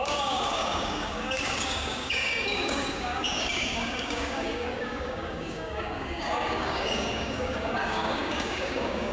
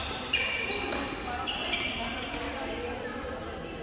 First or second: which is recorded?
second